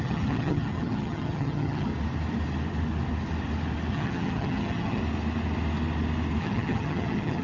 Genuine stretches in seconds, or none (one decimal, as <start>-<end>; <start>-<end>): 1.9-3.9; 5.0-6.4